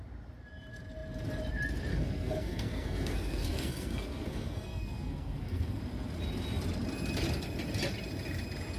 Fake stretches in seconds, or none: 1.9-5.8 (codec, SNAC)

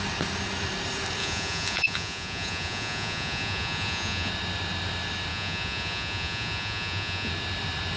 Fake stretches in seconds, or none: 1.2-4.3 (vocoder, Vocos); 5.3-7.3

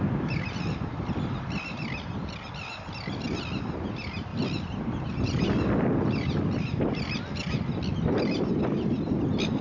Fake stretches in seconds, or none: none

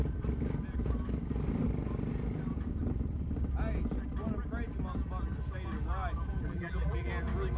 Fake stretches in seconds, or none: 6.5-7.1 (vocoder, BigVGAN v2)

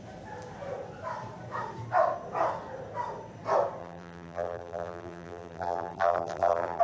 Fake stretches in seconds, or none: 3.8-6.8 (vocoder, BigVGAN v2)

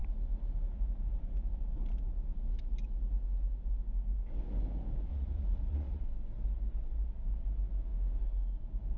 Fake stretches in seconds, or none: 5.1-6.0 (vocoder, Vocos)